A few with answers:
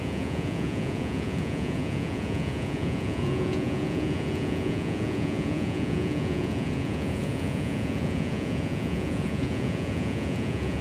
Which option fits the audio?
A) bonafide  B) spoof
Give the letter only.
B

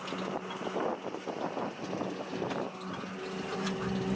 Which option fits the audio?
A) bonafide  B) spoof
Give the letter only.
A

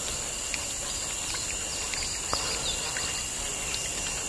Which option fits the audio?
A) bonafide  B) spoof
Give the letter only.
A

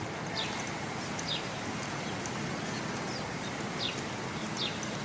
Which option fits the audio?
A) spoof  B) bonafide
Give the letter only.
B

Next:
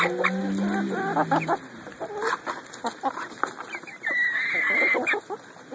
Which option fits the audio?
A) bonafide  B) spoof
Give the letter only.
A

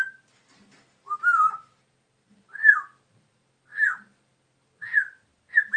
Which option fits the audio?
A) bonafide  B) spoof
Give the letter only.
A